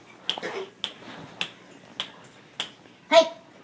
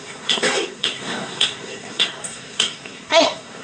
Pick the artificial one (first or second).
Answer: second